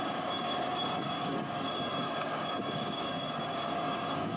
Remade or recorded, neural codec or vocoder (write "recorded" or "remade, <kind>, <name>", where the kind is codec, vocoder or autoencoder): remade, codec, DAC